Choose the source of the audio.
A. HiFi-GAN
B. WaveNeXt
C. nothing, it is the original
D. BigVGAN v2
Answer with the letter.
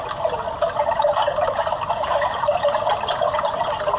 C